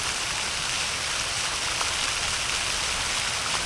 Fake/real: real